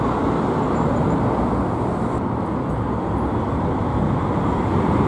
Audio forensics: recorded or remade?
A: recorded